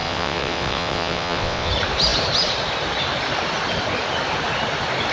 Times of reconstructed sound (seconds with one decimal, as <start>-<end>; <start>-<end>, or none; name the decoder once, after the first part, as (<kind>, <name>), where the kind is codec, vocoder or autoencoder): 0.0-1.7 (vocoder, WaveNeXt)